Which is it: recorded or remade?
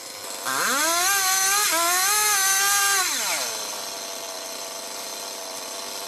recorded